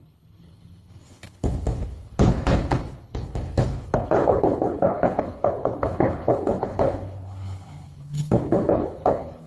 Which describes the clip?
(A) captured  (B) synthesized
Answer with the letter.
B